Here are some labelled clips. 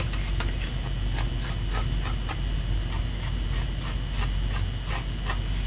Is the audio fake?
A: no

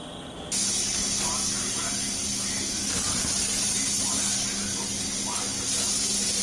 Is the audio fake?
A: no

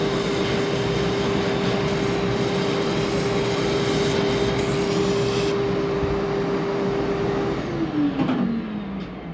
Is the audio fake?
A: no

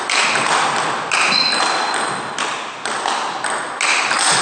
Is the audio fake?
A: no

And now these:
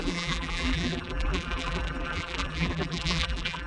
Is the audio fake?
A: yes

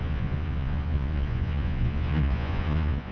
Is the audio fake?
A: yes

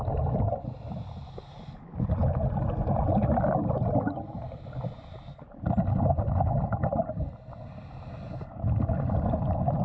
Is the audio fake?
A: no